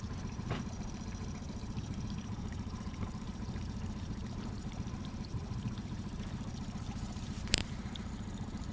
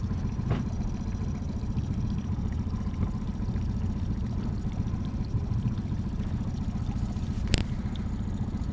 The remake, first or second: first